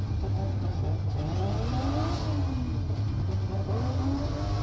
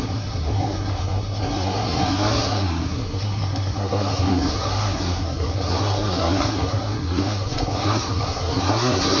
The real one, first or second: first